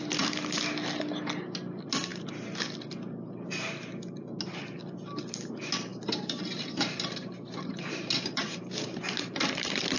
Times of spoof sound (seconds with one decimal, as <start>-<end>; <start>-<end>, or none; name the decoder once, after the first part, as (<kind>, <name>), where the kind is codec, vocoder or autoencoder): 5.9-10.0 (vocoder, BigVGAN v2)